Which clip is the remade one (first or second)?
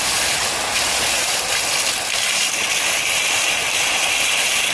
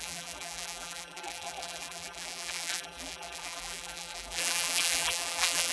second